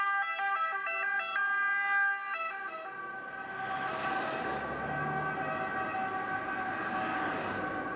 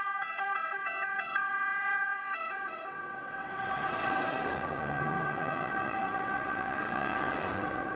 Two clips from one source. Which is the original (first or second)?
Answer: first